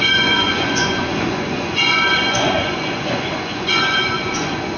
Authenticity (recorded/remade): remade